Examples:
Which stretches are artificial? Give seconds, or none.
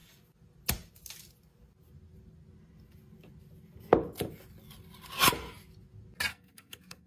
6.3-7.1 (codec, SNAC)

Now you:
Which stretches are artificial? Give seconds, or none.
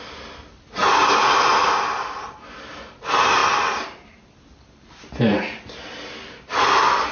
none